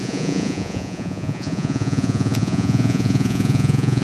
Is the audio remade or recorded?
remade